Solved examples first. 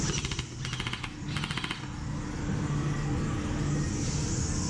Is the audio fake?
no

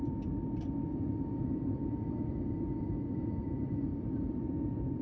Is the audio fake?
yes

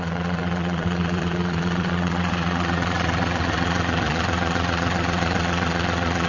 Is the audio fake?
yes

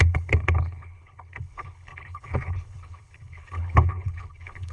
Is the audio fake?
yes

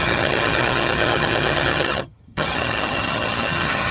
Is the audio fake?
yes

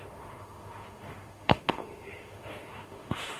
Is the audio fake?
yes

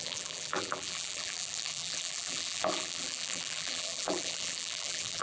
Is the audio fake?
yes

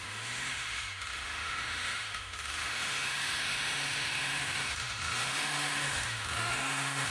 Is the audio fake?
yes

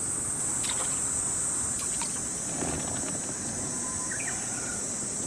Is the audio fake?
no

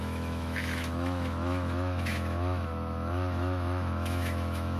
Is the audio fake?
yes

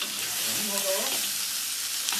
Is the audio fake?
no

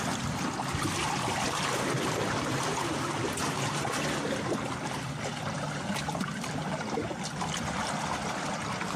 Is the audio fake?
no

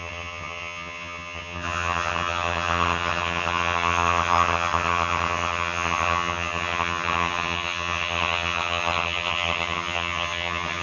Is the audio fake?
yes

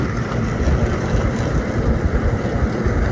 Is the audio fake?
no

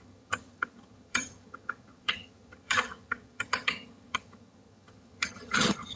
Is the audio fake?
yes